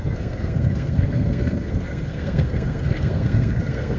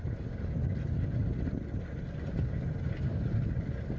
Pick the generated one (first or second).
first